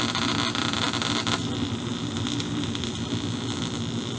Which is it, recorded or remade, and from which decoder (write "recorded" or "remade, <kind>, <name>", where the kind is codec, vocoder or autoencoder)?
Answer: remade, vocoder, BigVGAN v2